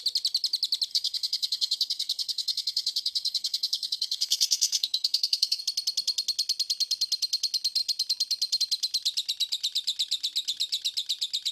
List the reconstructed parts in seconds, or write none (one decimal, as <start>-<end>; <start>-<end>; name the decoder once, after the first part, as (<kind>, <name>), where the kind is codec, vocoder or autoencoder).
0.9-5.6 (codec, SNAC)